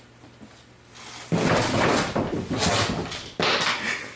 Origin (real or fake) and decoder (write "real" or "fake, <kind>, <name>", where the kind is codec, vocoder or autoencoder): real